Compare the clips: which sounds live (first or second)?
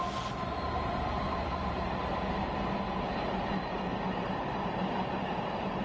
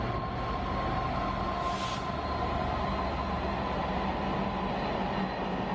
second